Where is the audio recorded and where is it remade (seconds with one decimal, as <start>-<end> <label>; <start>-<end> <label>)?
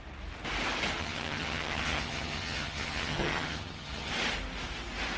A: 0.0-1.0 recorded; 1.0-4.1 remade; 4.1-5.2 recorded